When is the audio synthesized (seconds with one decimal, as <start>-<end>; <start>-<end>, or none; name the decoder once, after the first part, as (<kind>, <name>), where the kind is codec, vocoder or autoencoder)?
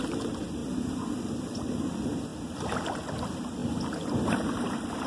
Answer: 0.0-0.6 (vocoder, BigVGAN v2); 1.2-2.3; 3.2-5.1